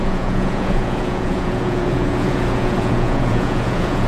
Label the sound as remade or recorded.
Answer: remade